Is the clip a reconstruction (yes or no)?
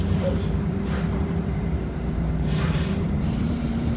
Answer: yes